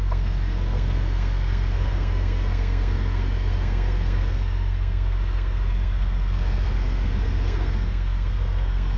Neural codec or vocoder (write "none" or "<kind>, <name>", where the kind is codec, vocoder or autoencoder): codec, SNAC